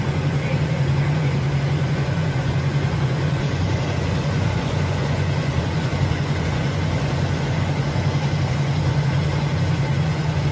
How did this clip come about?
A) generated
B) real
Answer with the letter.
A